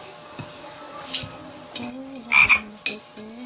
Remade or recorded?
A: recorded